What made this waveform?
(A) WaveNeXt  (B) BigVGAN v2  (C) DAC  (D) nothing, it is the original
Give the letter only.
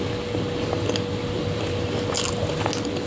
D